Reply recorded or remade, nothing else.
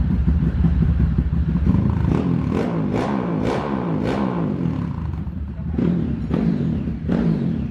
remade